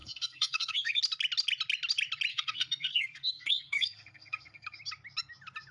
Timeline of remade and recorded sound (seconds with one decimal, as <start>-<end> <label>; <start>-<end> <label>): 0.0-1.0 remade; 1.0-2.3 recorded; 2.3-4.8 remade; 4.8-5.7 recorded